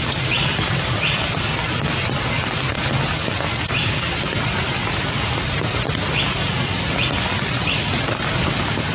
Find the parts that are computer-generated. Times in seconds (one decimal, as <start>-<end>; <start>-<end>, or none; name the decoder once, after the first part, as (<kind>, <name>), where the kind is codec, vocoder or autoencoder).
4.8-5.3 (vocoder, Vocos)